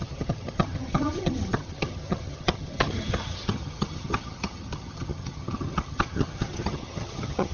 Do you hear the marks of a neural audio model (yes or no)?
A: yes